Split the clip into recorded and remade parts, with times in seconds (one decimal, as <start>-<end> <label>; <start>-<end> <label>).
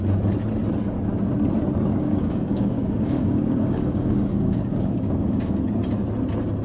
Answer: 0.0-1.9 recorded; 1.9-5.6 remade; 5.6-6.6 recorded